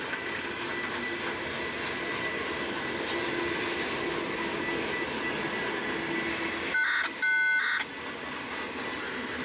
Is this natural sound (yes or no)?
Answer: yes